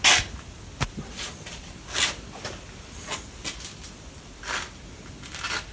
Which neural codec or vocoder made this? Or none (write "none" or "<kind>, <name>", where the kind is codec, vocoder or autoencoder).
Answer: none